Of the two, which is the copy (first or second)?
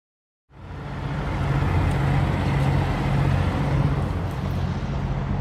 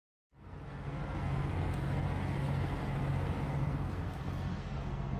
second